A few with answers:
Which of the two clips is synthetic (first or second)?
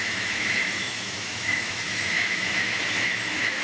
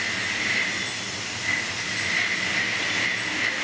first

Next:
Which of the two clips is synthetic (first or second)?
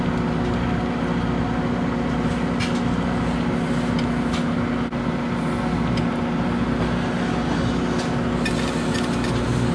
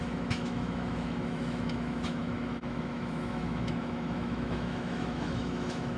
second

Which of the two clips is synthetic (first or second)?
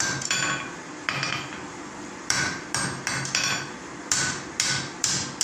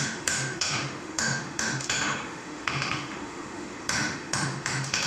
second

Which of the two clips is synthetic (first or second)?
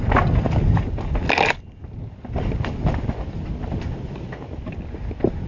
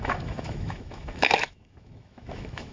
second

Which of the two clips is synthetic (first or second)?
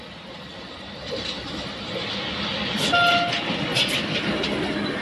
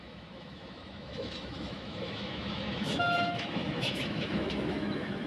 second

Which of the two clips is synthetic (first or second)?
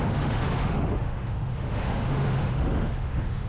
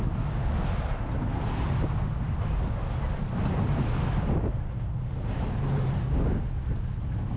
first